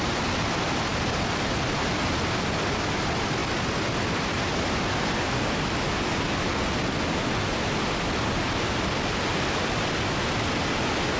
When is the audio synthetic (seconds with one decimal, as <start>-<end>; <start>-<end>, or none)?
none